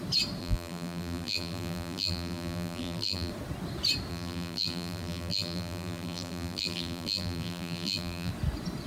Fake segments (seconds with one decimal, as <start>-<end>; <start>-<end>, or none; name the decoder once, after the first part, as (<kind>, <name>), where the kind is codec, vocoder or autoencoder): 0.4-3.3 (vocoder, BigVGAN v2); 4.1-8.3